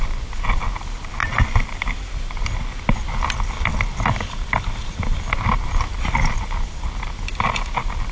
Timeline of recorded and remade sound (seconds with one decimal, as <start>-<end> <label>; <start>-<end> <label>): 0.0-1.2 recorded; 1.2-6.1 remade; 6.1-8.1 recorded